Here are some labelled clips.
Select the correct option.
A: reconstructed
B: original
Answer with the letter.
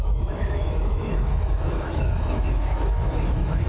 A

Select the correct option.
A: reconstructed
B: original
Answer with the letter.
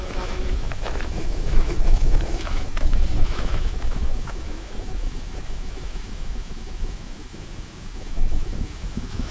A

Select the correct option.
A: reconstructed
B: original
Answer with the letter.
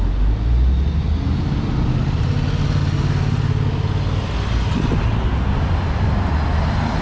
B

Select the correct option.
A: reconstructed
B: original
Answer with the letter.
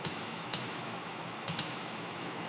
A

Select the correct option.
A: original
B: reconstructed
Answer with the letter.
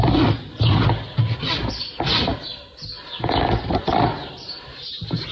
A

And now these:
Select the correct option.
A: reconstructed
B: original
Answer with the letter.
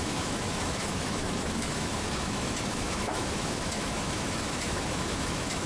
A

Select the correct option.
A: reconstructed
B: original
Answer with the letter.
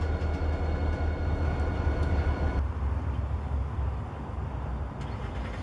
B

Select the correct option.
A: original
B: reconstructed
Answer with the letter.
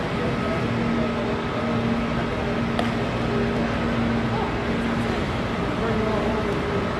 A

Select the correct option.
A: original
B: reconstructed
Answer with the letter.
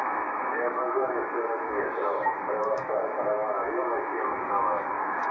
B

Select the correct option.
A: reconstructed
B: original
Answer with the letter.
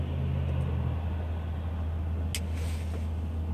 B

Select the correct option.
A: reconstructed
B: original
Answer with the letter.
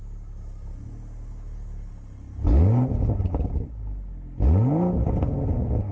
B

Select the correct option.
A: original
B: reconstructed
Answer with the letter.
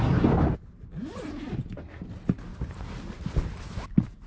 A